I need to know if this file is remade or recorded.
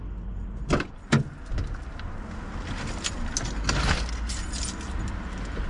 recorded